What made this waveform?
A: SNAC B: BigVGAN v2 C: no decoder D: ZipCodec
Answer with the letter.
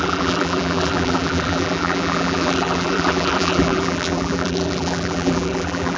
B